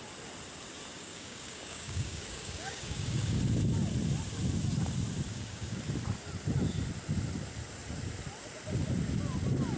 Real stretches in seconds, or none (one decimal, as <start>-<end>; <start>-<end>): 0.0-0.9; 3.4-5.3; 5.8-9.8